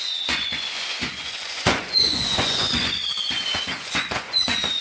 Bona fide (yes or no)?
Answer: no